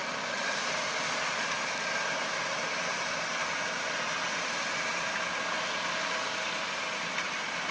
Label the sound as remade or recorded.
recorded